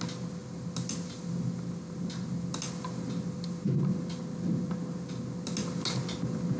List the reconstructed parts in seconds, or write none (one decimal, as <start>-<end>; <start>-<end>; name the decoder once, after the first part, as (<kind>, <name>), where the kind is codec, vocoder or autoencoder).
none